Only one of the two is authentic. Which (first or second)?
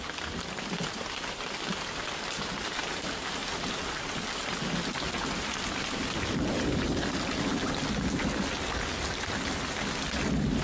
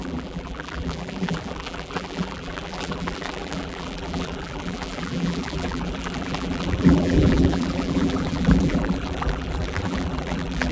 first